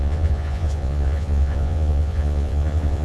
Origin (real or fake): fake